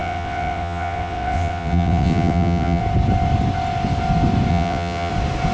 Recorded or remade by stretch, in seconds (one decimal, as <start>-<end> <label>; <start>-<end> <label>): 0.0-2.8 remade; 2.8-4.5 recorded; 4.5-5.1 remade; 5.1-5.5 recorded